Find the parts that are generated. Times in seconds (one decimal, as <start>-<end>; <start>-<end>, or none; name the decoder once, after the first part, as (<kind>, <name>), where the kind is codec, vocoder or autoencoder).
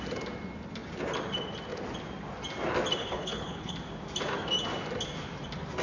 3.0-3.7 (codec, HILCodec)